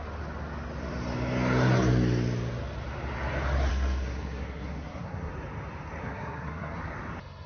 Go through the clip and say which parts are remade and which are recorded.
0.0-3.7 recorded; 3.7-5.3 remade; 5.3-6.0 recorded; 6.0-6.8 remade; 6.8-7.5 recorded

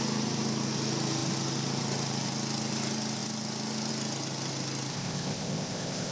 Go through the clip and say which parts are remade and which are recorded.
0.0-4.9 recorded; 4.9-6.1 remade

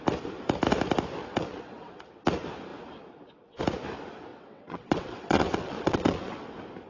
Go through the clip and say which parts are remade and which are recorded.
0.0-1.2 recorded; 1.2-2.0 remade; 2.0-4.3 recorded; 4.3-6.5 remade; 6.5-6.9 recorded

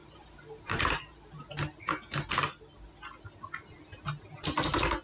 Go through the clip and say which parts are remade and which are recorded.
0.0-1.4 remade; 1.4-5.0 recorded